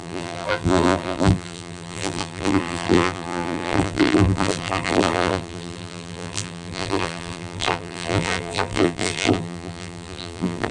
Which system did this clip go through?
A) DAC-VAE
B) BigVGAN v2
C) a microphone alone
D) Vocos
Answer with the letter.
B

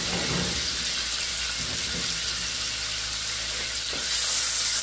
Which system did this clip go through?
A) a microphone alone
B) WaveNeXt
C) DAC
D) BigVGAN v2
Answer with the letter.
A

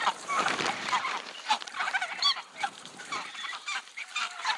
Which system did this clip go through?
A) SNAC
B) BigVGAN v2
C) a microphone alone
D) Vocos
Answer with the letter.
B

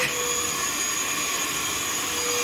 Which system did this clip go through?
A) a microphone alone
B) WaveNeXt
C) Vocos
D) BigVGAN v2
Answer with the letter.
A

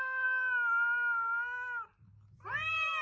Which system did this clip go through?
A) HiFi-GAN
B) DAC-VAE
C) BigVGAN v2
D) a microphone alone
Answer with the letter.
D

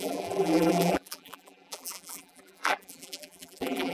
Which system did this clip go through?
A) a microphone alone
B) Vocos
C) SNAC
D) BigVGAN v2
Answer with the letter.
D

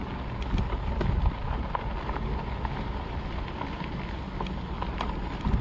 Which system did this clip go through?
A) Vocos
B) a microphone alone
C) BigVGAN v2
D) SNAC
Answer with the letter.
B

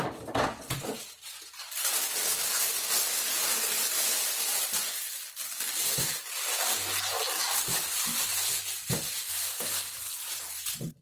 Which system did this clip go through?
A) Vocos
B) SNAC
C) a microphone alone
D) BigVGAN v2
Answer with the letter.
C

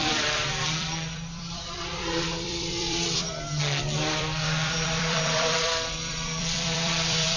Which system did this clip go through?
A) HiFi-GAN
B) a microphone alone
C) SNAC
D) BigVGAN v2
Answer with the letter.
D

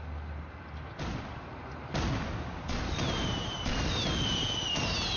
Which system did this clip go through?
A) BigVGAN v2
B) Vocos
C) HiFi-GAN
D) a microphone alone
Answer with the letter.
D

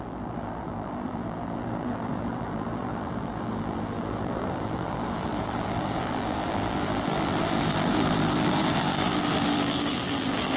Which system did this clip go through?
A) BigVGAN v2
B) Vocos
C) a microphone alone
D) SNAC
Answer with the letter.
A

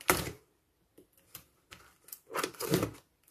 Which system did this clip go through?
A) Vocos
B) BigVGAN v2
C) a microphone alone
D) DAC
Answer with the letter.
B